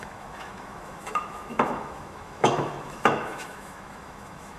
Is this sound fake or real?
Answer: fake